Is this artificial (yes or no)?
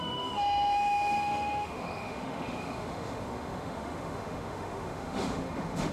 yes